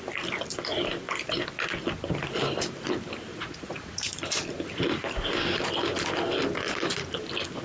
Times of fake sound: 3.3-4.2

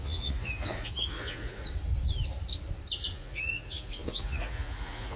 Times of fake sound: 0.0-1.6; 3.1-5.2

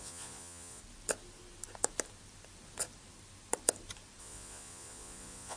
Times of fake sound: 0.0-0.8; 4.2-5.6

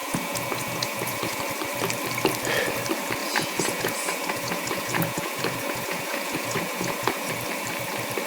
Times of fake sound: 0.0-1.4; 3.2-7.3

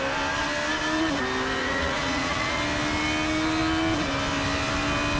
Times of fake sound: 1.6-2.6

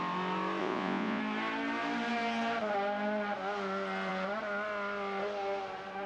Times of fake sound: 0.6-1.2

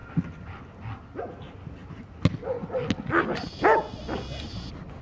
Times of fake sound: none

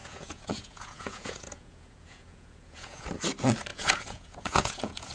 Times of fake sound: 0.0-3.1; 3.7-5.1